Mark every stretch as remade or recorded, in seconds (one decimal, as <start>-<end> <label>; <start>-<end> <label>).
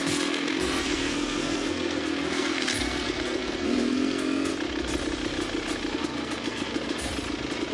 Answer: 0.0-4.5 remade; 4.5-5.9 recorded; 5.9-7.1 remade; 7.1-7.7 recorded